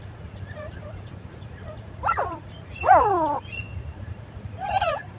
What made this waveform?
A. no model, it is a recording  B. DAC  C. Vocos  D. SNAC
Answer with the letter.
C